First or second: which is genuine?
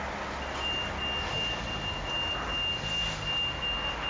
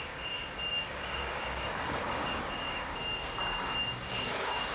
first